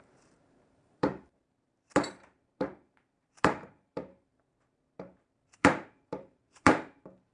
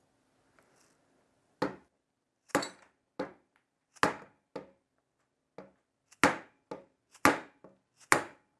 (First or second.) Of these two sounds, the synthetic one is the first